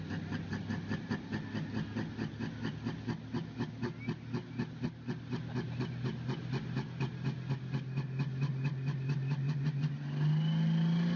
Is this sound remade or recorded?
recorded